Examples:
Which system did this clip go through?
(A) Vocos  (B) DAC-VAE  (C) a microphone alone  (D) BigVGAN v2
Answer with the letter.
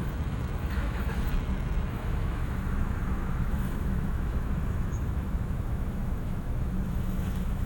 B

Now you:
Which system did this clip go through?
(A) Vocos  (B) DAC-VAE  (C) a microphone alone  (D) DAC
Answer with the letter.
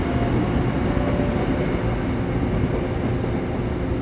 C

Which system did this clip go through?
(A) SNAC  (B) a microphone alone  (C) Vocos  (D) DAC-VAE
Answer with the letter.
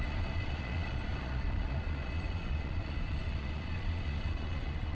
C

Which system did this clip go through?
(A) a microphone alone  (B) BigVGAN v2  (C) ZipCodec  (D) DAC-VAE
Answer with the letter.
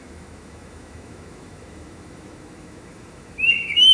D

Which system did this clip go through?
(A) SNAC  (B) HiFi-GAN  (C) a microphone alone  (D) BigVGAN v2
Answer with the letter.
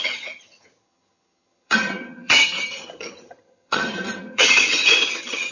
B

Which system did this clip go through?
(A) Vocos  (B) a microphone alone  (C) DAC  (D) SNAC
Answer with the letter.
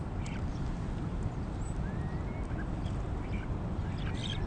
B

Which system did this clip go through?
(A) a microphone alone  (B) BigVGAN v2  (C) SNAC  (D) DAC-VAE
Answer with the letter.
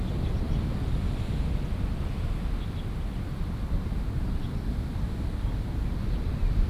A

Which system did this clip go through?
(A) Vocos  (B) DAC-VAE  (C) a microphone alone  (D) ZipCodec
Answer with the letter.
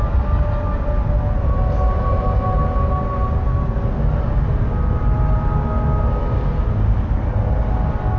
C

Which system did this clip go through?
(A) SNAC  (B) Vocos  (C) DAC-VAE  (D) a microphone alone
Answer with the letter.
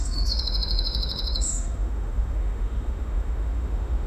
C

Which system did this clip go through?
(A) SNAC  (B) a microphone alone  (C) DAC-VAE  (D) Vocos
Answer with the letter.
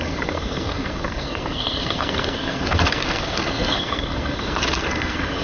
A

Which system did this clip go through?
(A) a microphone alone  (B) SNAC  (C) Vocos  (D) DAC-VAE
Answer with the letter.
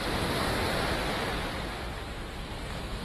A